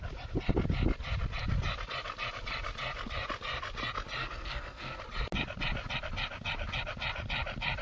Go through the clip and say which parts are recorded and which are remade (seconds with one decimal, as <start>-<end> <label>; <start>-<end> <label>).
0.0-4.2 recorded; 4.2-5.0 remade; 5.0-7.8 recorded